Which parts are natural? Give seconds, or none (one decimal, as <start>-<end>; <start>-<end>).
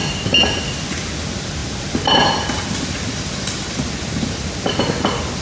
0.0-5.4